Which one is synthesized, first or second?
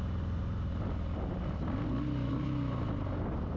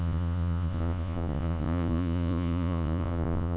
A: second